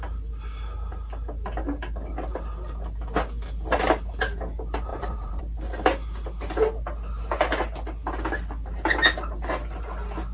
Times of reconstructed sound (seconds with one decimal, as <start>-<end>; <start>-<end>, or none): 4.9-5.4